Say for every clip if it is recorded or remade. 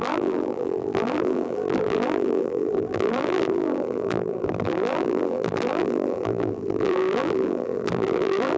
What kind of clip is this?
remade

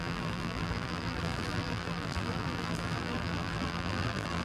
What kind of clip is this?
remade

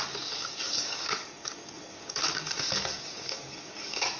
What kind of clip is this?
remade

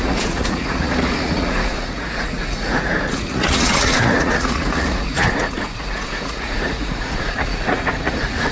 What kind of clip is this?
remade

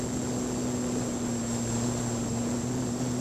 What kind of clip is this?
recorded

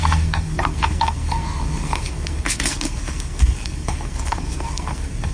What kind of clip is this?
remade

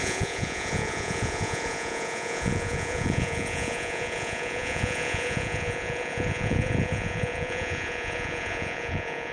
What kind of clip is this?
remade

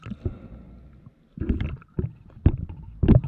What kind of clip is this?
recorded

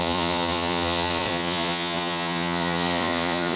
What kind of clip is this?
remade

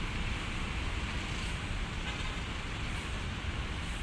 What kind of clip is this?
recorded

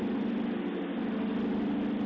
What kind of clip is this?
recorded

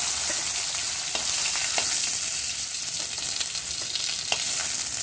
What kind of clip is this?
recorded